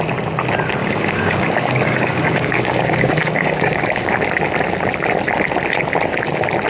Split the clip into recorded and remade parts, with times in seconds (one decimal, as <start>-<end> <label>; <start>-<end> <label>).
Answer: 0.0-0.8 recorded; 0.8-4.1 remade; 4.1-6.7 recorded